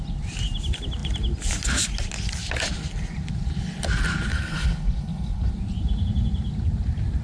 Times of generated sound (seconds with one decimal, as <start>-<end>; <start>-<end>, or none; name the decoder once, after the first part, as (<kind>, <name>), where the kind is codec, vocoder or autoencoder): 4.3-5.5 (codec, HILCodec)